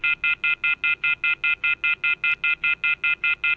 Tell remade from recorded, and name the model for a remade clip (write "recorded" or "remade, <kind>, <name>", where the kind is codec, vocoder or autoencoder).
recorded